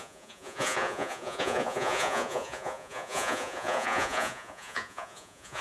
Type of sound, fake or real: fake